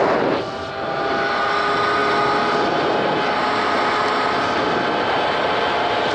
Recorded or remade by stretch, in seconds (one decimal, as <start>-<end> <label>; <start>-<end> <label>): 0.0-6.1 recorded